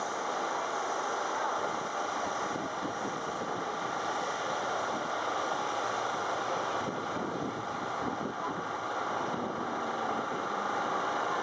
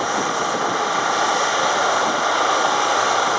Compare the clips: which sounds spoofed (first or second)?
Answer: first